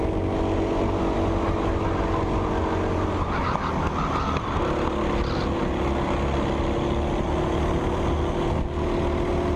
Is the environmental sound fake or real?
real